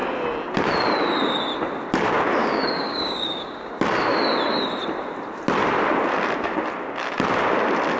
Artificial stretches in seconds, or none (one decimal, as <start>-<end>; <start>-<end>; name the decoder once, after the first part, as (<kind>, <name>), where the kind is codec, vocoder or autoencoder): 2.4-3.7 (codec, DAC)